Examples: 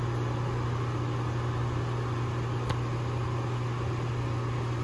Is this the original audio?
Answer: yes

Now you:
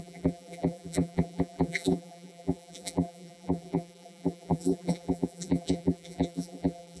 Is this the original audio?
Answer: no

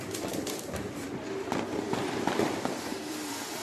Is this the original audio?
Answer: no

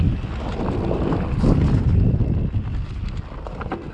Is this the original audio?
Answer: yes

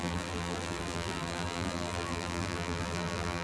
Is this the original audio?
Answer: no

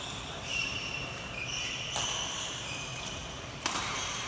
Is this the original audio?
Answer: no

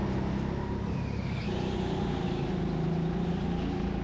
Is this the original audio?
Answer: yes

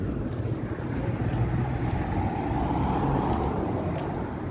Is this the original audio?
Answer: no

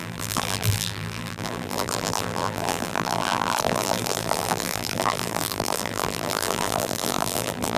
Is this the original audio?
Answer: no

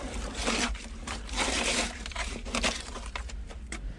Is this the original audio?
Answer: no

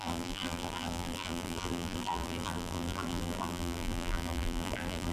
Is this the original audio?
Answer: no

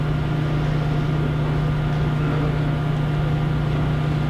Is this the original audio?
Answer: yes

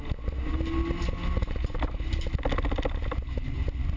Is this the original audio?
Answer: yes